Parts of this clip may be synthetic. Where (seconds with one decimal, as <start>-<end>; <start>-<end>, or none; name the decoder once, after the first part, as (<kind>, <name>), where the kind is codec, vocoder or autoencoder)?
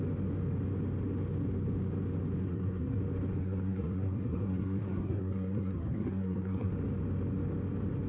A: 2.4-3.0 (codec, SNAC); 3.4-6.7